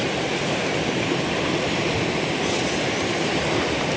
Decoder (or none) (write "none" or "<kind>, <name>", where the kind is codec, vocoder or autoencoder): vocoder, BigVGAN v2